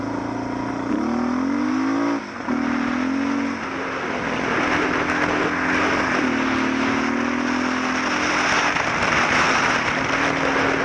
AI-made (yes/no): no